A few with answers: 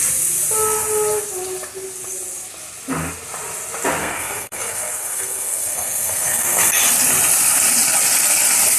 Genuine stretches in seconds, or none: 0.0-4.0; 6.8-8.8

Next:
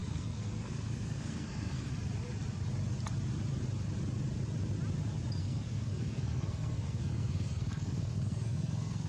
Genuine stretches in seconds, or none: 1.9-5.4

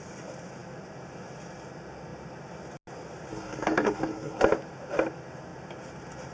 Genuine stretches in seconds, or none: 0.0-3.3; 4.4-6.3

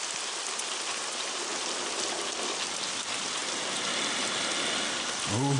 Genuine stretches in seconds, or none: 0.0-5.6

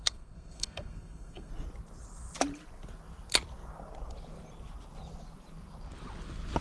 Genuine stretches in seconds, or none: 1.5-6.6

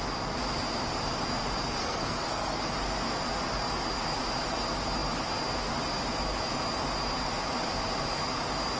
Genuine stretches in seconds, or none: 0.0-1.8; 2.6-8.8